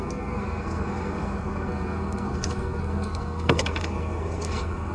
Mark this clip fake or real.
fake